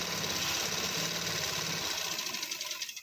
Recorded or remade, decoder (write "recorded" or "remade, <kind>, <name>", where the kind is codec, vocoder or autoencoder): recorded